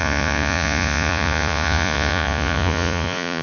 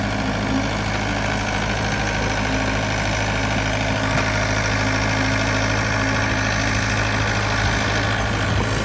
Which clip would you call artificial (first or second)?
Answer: first